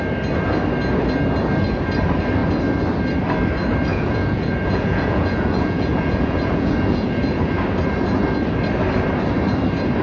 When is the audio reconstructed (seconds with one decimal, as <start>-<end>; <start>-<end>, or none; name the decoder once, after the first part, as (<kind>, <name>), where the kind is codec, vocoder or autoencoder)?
3.9-7.5 (vocoder, Vocos)